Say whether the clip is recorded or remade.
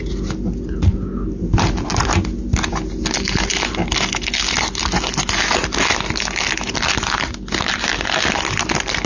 recorded